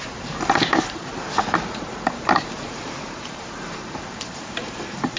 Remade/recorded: remade